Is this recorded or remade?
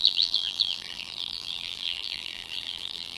remade